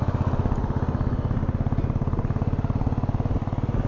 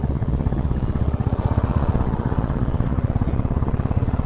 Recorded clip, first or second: first